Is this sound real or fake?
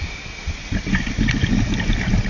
real